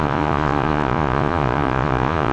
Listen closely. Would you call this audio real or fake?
fake